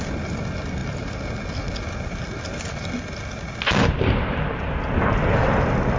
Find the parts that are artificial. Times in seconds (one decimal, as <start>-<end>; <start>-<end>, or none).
none